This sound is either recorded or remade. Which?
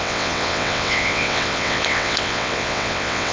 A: remade